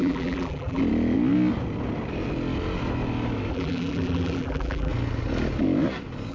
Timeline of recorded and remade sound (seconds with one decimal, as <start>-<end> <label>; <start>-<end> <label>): 0.0-0.8 remade; 0.8-3.5 recorded; 3.5-4.9 remade; 4.9-6.3 recorded